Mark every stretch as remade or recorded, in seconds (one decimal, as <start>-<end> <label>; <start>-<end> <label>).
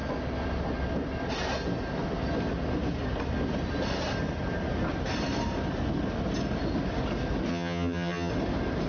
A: 0.0-7.5 recorded; 7.5-8.3 remade; 8.3-8.9 recorded